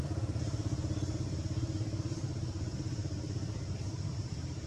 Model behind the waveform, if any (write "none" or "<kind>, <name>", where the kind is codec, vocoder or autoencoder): vocoder, BigVGAN v2